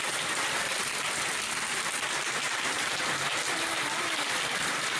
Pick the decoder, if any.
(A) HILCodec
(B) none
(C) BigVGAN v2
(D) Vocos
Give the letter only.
B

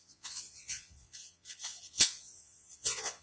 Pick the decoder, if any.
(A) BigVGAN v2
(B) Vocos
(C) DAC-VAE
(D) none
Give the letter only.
B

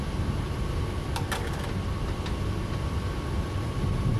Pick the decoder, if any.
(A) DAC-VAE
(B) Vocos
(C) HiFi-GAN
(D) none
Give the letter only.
D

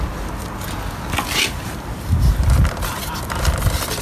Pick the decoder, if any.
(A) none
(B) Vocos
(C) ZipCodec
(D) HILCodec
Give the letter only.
A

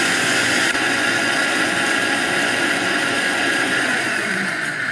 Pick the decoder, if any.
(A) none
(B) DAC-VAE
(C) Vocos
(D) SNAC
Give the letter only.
C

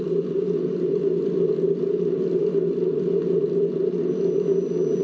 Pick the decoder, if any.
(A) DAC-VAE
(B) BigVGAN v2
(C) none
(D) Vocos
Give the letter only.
C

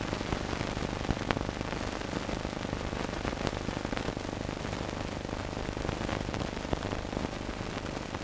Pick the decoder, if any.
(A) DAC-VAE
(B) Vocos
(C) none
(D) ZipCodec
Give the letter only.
C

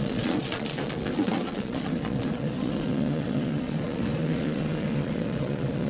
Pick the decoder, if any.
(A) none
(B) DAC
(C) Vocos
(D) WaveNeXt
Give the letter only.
C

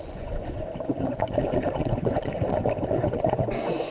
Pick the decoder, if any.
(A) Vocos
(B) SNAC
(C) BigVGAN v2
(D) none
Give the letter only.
A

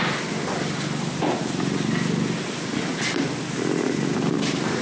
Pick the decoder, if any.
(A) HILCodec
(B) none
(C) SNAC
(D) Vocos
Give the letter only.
B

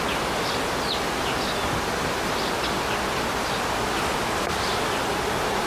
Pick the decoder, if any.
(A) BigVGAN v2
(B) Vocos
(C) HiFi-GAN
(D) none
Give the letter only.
D